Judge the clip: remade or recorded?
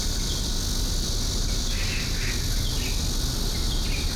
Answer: recorded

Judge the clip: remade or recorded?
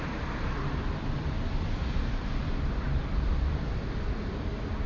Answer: remade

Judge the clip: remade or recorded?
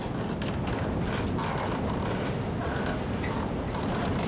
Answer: recorded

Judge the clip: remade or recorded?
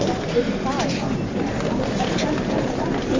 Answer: recorded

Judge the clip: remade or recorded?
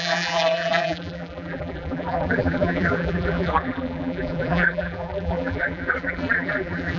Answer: remade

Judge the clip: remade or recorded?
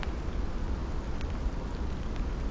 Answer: recorded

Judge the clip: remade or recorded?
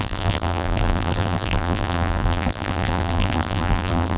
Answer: remade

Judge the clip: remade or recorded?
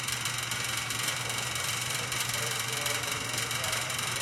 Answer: remade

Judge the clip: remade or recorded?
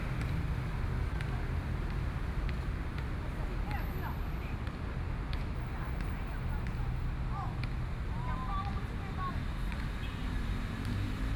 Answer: recorded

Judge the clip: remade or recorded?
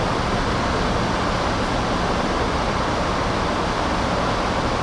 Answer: recorded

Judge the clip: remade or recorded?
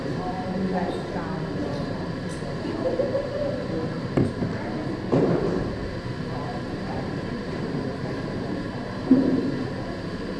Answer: remade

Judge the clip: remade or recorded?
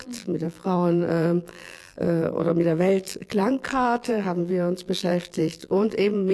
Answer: remade